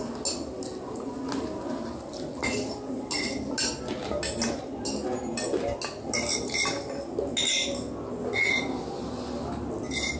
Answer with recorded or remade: recorded